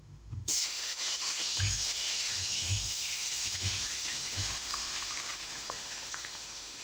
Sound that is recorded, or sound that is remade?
remade